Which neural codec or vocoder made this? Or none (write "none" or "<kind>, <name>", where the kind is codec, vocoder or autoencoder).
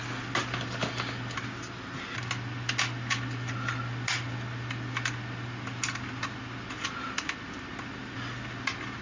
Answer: none